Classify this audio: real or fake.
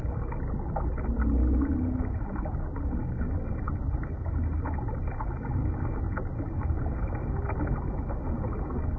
real